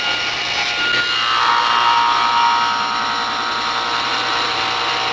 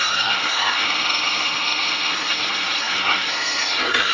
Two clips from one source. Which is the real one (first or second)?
first